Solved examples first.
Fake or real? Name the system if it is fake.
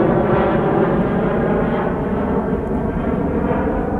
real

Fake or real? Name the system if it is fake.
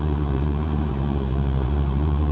fake, vocoder, Vocos